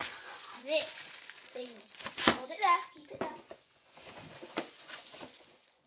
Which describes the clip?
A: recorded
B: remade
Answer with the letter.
B